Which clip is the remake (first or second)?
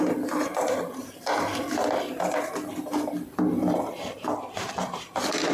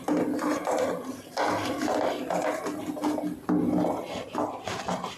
first